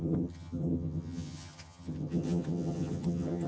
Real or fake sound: fake